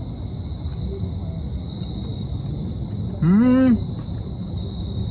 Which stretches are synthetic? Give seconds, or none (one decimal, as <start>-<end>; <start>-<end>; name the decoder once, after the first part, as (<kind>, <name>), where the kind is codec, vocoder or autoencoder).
none